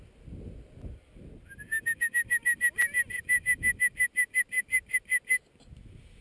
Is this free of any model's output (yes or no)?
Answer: yes